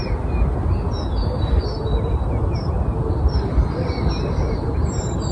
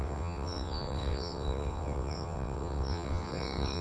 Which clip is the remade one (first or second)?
second